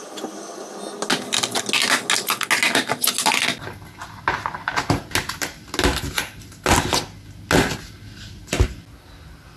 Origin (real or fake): real